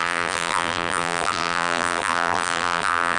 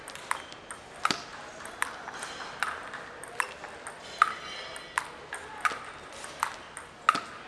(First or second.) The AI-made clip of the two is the first